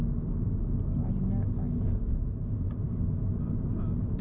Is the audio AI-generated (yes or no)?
no